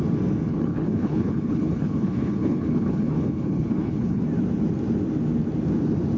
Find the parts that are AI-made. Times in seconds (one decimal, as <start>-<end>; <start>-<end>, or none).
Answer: 0.5-4.2